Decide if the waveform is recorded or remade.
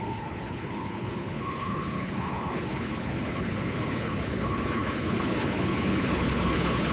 remade